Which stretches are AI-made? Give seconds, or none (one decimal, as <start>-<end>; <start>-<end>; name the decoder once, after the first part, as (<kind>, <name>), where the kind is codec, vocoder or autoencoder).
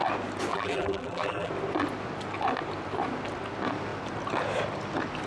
0.5-1.5 (vocoder, BigVGAN v2)